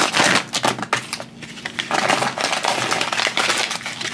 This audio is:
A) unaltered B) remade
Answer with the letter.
A